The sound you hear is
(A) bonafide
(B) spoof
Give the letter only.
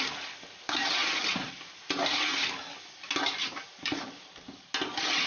A